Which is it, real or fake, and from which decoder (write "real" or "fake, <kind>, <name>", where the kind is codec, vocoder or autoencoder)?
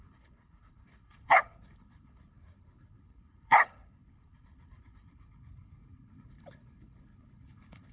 fake, codec, HILCodec